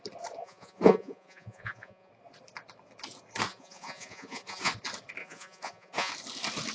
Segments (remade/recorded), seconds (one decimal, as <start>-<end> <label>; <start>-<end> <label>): 0.0-0.4 recorded; 0.4-2.1 remade; 2.1-3.5 recorded; 3.5-4.7 remade; 4.7-5.2 recorded; 5.2-6.1 remade; 6.1-6.7 recorded